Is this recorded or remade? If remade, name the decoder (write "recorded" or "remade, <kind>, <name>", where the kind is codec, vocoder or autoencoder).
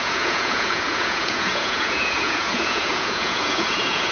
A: remade, vocoder, Vocos